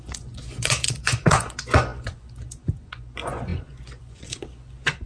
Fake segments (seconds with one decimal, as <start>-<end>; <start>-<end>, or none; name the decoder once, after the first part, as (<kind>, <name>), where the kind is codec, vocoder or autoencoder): 0.0-5.1 (vocoder, Vocos)

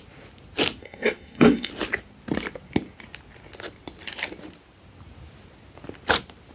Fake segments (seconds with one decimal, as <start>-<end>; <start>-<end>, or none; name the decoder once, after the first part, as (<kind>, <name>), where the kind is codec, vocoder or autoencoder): 0.8-1.7 (codec, SNAC)